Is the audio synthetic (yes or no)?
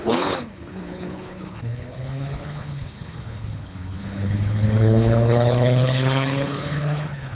yes